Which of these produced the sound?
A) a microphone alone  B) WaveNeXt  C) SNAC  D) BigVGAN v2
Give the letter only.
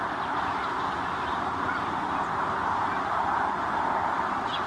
D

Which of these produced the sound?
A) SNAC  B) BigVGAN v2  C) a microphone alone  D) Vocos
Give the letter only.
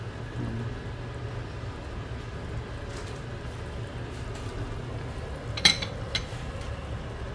C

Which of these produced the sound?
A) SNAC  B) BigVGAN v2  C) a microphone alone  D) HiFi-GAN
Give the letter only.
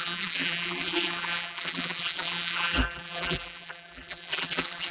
B